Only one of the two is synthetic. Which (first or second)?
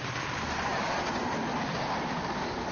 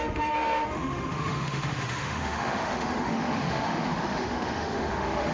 second